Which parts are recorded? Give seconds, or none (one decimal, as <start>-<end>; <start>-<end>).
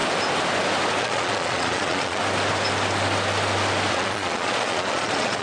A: 0.0-1.0; 2.2-3.9